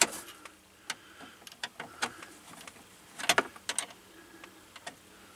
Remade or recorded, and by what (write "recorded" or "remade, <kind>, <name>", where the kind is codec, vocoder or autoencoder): recorded